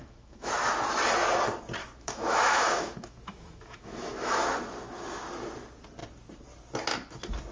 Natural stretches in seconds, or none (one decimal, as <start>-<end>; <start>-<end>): 0.5-1.8; 4.5-7.5